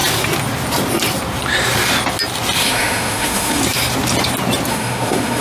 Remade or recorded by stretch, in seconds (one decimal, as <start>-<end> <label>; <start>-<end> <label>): 0.0-2.6 recorded; 2.6-3.6 remade; 3.6-4.7 recorded; 4.7-5.4 remade